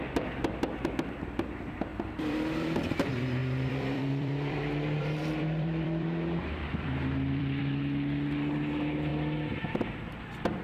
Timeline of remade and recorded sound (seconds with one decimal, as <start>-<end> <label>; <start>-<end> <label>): 0.0-1.9 recorded; 1.9-2.8 remade; 2.8-3.4 recorded; 3.4-7.6 remade; 7.6-10.6 recorded